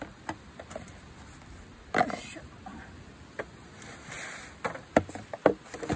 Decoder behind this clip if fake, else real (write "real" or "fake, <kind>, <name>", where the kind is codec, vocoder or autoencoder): real